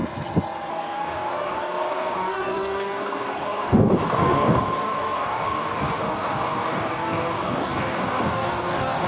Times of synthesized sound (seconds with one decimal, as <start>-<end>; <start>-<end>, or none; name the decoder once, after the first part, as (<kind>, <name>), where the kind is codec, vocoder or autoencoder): 0.7-9.1 (codec, DAC)